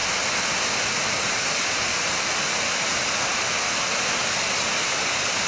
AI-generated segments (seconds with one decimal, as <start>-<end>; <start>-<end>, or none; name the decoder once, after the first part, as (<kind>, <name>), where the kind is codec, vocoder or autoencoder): none